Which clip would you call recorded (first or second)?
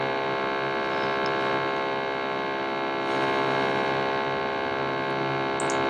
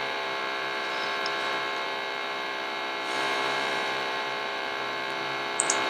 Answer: first